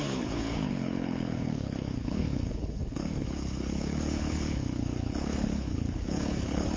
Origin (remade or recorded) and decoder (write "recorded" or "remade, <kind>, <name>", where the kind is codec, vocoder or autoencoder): remade, codec, HILCodec